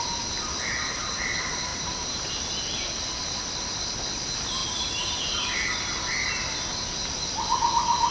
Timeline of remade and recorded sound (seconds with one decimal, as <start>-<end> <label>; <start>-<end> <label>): 0.0-1.7 recorded; 1.7-2.3 remade; 2.3-4.6 recorded; 4.6-5.4 remade; 5.4-8.1 recorded